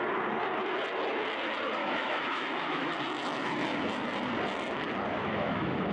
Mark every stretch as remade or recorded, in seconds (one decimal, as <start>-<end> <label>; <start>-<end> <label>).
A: 0.0-1.8 recorded; 1.8-2.9 remade; 2.9-5.2 recorded; 5.2-5.9 remade